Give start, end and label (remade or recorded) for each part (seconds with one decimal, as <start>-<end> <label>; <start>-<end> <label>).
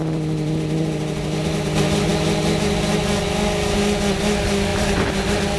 0.0-5.6 recorded